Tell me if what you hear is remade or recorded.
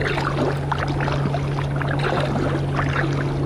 recorded